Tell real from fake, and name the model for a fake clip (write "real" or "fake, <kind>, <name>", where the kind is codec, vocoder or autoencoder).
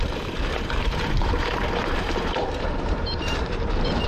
fake, vocoder, BigVGAN v2